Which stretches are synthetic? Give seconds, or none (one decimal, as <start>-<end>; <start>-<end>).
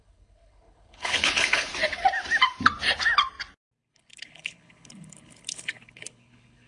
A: 0.0-1.7; 3.9-6.7